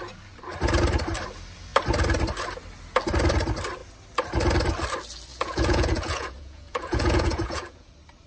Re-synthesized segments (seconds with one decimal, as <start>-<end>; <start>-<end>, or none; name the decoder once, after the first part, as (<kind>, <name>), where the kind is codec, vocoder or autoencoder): 5.3-7.9 (vocoder, Vocos)